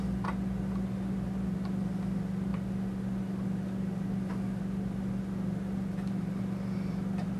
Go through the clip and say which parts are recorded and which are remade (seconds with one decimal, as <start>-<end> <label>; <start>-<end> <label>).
0.0-7.4 recorded